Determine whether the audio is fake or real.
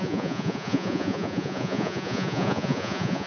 fake